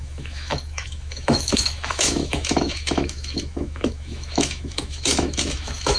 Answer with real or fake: fake